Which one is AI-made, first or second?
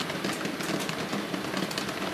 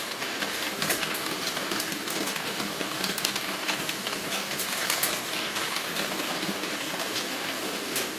second